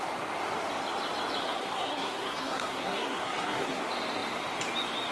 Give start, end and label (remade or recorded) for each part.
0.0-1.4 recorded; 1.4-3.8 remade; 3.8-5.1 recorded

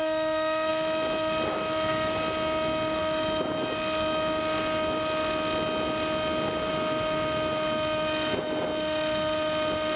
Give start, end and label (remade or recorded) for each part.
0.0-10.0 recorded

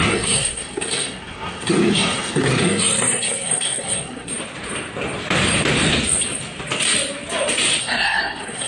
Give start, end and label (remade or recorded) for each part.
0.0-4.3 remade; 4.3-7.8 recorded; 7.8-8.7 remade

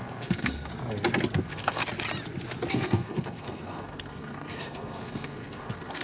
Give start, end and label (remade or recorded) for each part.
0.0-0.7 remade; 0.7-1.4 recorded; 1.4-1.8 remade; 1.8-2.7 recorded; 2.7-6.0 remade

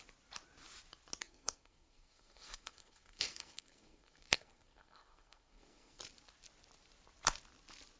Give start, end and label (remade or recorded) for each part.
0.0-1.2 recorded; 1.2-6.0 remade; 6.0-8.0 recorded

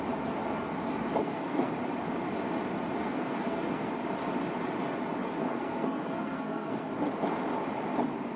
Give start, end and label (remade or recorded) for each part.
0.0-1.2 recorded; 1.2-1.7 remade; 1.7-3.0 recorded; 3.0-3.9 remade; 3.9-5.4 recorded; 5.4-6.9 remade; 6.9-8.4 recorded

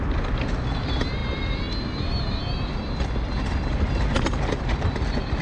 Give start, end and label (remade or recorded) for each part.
0.0-5.4 recorded

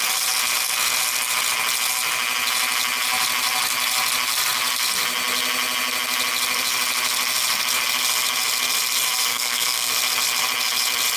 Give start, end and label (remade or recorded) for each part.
0.0-9.3 recorded; 9.3-9.9 remade; 9.9-11.2 recorded